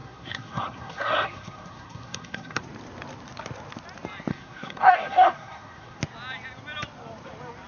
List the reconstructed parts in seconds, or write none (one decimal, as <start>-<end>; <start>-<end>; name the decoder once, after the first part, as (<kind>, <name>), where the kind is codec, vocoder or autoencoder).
0.0-2.6 (codec, SNAC); 4.3-6.0